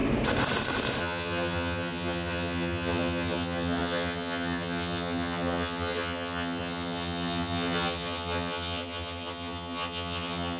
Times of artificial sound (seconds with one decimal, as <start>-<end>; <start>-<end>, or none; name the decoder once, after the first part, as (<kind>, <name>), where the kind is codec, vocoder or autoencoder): 1.0-10.6 (vocoder, HiFi-GAN)